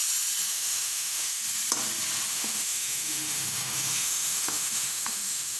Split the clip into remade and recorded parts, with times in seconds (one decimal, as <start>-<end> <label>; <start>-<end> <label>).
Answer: 0.0-0.5 recorded; 0.5-1.4 remade; 1.4-2.3 recorded; 2.3-5.6 remade